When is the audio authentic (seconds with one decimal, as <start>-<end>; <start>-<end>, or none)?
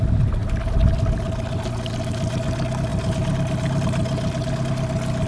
0.0-5.3